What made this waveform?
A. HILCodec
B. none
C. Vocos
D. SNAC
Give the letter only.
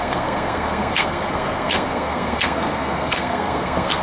D